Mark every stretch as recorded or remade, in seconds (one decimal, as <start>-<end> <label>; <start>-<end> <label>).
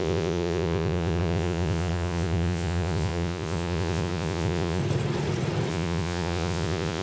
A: 0.0-4.8 remade; 4.8-5.7 recorded; 5.7-7.0 remade